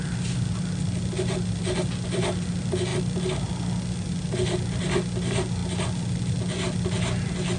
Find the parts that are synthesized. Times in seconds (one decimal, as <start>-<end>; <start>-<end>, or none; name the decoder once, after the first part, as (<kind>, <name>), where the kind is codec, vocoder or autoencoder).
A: none

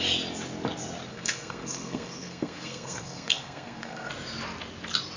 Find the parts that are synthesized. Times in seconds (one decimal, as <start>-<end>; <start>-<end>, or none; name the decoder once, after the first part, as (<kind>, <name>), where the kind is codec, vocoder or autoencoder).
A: 1.1-4.1 (codec, SNAC)

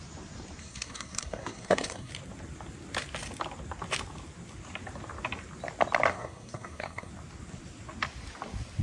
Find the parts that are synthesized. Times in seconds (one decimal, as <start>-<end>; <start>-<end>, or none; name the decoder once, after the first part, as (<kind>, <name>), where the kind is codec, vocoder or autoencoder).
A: 0.6-2.1 (codec, SNAC); 6.1-7.1

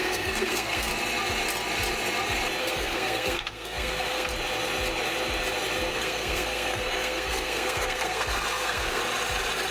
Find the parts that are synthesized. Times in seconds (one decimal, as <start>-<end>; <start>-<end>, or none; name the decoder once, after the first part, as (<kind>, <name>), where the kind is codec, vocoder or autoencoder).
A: 0.0-0.9 (codec, SNAC); 2.6-4.3; 5.9-9.0

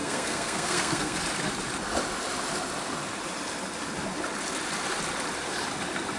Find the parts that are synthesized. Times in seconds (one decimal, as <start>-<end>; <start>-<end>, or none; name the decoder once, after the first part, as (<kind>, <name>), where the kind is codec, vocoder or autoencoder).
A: 0.0-1.2 (codec, SNAC)

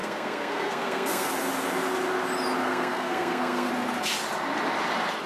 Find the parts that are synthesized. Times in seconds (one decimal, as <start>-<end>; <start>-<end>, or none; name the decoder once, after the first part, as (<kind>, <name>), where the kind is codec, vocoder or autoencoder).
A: 0.0-1.3 (codec, SNAC); 2.6-3.7

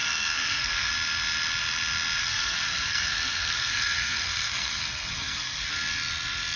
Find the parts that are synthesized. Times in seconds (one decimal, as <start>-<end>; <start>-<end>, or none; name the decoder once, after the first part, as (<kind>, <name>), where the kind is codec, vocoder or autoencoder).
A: 0.0-0.9 (codec, SNAC); 2.2-5.6